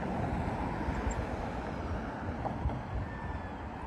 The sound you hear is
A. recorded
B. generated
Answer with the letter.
A